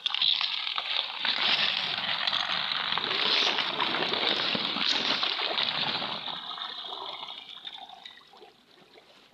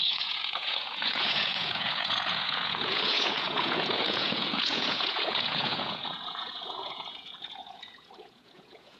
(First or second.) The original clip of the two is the first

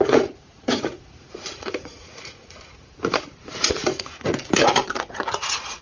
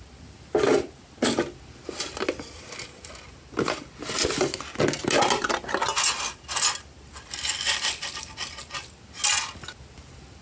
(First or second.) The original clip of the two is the second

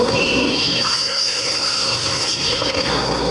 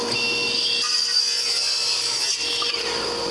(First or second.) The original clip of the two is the second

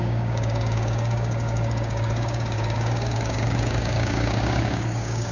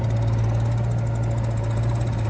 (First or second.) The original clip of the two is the second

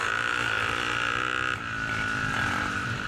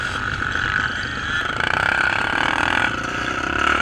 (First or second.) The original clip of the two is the first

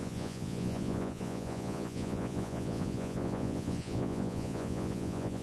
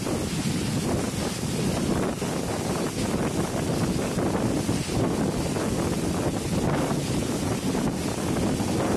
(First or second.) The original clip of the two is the second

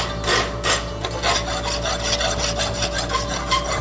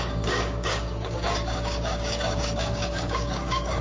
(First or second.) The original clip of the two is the first